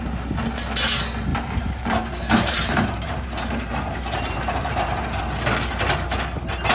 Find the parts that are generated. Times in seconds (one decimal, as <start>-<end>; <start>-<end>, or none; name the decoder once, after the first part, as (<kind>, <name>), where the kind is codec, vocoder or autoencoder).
1.3-5.2 (vocoder, BigVGAN v2)

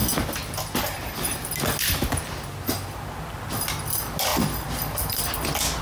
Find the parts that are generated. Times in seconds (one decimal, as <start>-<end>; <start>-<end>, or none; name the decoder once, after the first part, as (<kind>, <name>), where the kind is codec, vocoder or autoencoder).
none

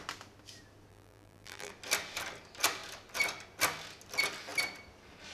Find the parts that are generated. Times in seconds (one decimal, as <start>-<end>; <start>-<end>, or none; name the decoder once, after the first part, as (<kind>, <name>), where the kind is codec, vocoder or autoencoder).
0.9-1.7 (vocoder, BigVGAN v2)

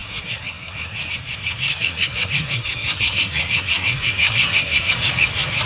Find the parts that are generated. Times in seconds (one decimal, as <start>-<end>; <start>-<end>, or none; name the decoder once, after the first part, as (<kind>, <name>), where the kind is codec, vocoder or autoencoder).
0.0-1.1 (codec, SNAC); 1.7-4.9

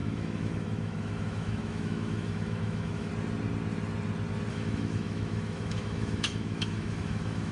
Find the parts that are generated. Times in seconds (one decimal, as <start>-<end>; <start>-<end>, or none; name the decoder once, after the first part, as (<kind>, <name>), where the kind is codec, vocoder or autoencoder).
0.0-3.1 (autoencoder, DAC-VAE); 4.5-7.5